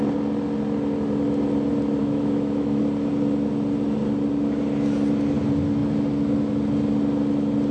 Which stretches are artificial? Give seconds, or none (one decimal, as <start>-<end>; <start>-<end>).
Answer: 2.0-2.8